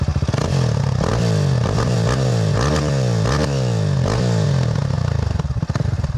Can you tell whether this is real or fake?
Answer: real